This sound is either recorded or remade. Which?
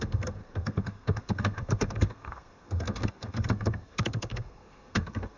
remade